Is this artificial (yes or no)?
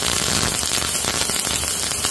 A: no